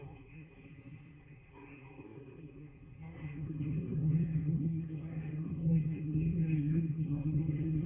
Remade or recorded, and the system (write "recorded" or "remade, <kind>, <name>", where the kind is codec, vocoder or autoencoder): remade, codec, SNAC